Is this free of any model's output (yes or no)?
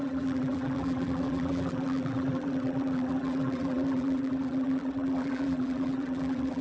no